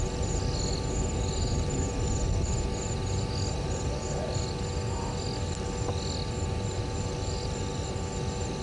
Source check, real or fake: real